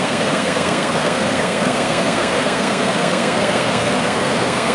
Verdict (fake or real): fake